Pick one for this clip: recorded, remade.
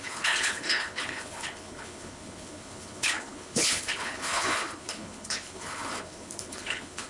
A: remade